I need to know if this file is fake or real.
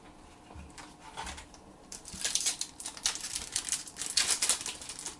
real